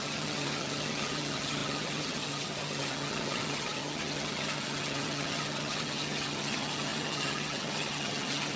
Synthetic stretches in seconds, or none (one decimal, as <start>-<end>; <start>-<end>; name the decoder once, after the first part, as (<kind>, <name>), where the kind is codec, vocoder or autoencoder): 0.0-8.6 (vocoder, HiFi-GAN)